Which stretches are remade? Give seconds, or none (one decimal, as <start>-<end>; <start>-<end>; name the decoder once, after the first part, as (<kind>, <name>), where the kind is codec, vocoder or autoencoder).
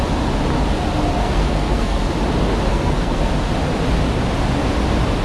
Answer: 1.2-2.0 (codec, SNAC); 2.7-3.3